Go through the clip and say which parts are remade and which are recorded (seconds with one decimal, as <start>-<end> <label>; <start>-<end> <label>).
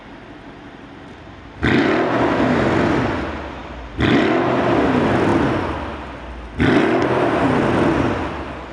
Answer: 0.0-8.7 recorded